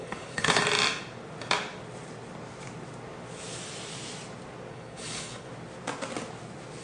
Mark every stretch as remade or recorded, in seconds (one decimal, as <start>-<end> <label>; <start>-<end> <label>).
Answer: 0.0-0.6 remade; 0.6-4.7 recorded; 4.7-5.5 remade; 5.5-6.8 recorded